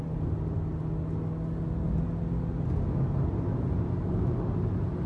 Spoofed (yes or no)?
no